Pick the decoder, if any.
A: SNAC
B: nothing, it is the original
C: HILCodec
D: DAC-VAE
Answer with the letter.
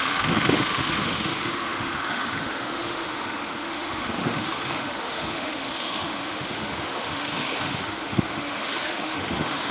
D